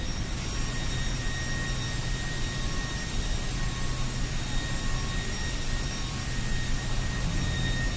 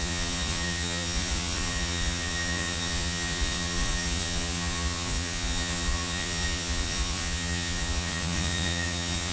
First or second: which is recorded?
first